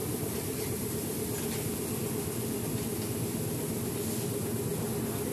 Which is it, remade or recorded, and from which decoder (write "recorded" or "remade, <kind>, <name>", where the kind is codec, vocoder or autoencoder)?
recorded